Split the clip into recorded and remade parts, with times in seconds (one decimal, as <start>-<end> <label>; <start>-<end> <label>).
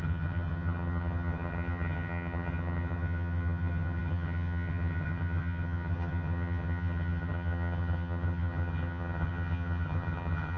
0.0-10.6 remade